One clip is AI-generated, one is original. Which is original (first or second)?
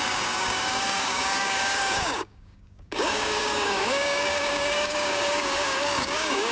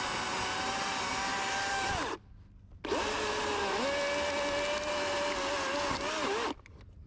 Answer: second